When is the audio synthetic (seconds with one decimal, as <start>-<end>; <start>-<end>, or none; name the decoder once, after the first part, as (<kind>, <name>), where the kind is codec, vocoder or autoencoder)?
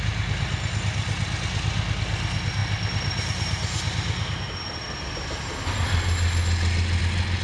none